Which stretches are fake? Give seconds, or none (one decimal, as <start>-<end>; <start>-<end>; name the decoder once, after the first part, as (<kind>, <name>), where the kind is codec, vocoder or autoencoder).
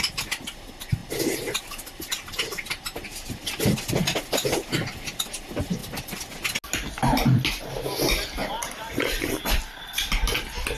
8.4-10.3 (vocoder, BigVGAN v2)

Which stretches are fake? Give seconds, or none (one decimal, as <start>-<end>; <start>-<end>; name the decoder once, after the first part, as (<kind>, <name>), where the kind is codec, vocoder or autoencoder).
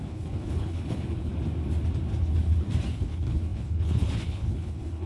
0.0-1.3 (codec, HILCodec); 2.9-5.1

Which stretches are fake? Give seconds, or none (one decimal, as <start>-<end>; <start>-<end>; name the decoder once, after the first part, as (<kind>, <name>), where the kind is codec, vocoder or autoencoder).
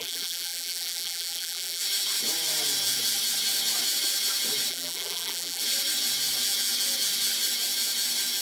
0.0-1.8 (vocoder, BigVGAN v2); 4.7-5.6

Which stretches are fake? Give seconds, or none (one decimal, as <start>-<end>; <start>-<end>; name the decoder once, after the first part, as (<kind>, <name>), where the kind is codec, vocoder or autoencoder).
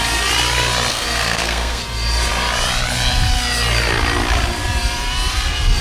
0.9-1.8 (codec, SNAC)